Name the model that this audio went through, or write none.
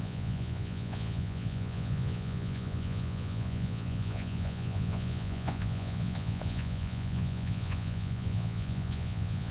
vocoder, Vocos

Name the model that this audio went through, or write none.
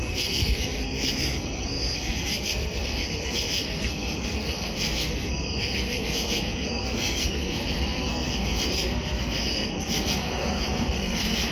codec, SNAC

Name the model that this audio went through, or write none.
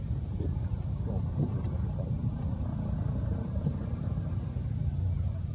vocoder, BigVGAN v2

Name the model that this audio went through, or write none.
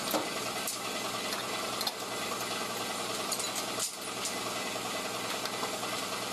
none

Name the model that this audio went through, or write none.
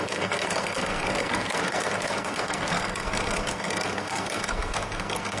codec, SNAC